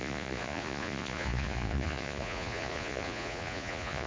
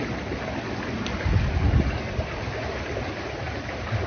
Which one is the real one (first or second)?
second